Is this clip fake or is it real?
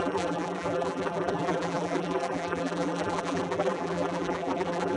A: fake